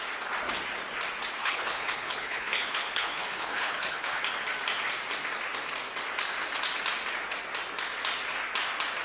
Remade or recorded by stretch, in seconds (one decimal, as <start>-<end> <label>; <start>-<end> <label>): 0.0-1.4 recorded; 1.4-4.2 remade; 4.2-9.0 recorded